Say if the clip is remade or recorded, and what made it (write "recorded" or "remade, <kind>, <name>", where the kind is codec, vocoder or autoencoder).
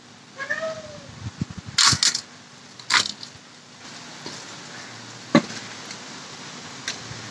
recorded